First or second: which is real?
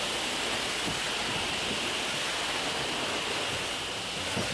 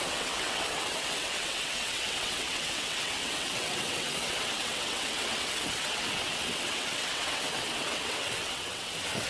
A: first